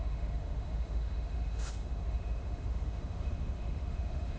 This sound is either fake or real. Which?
fake